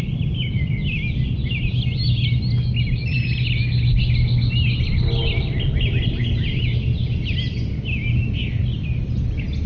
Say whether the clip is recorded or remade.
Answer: recorded